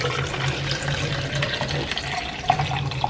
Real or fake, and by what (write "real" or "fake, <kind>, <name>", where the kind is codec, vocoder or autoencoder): real